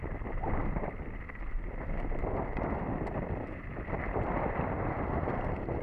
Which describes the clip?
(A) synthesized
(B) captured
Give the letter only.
A